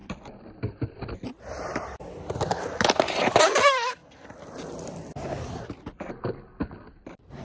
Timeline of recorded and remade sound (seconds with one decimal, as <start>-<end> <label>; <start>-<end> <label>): 0.0-7.4 recorded